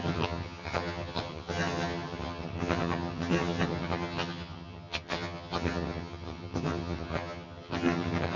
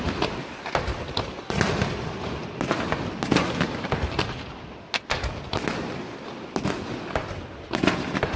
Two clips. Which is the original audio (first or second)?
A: second